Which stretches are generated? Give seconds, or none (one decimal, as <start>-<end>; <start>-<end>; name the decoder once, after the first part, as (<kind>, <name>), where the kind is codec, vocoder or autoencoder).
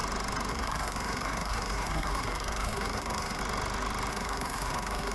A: 0.5-3.4 (codec, SNAC); 4.1-5.1